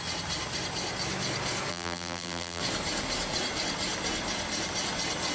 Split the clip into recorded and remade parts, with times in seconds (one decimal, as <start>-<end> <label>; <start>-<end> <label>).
0.0-1.7 recorded; 1.7-2.6 remade; 2.6-5.3 recorded